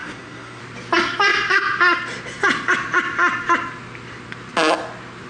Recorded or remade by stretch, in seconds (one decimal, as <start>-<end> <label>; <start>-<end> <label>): 0.0-0.6 remade; 0.6-5.3 recorded